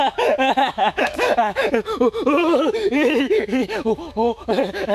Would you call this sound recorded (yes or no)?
no